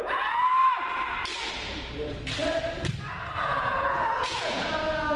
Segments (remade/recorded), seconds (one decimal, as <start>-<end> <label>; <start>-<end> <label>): 0.0-0.5 remade; 0.5-3.4 recorded; 3.4-5.2 remade